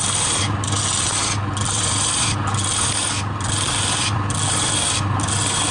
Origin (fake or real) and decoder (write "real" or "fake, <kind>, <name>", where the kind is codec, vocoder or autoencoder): real